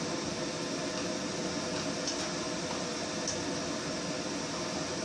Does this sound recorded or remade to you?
recorded